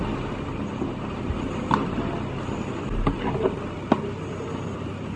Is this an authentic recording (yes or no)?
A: yes